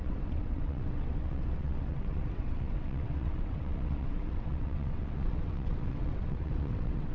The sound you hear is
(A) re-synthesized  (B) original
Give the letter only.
A